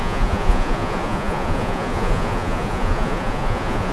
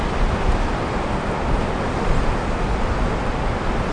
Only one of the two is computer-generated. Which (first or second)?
first